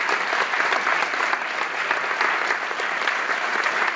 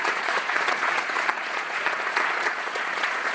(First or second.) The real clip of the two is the first